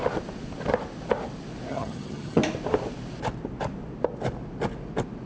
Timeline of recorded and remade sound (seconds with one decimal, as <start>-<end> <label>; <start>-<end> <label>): 0.0-1.7 recorded; 1.7-2.4 remade; 2.4-5.3 recorded